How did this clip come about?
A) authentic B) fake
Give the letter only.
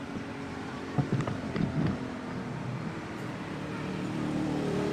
B